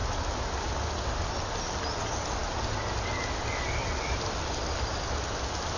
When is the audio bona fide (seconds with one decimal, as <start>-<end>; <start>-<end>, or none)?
0.0-5.8